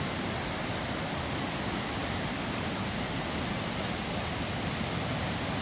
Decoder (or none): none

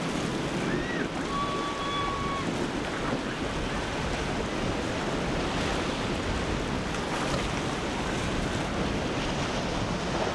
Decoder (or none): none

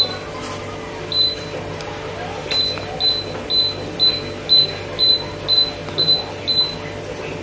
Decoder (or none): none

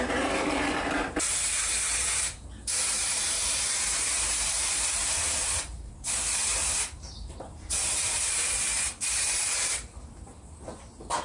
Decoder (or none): vocoder, BigVGAN v2